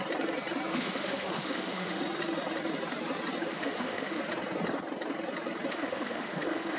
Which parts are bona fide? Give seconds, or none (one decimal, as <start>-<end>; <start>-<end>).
0.0-0.7; 2.0-3.5; 4.2-5.7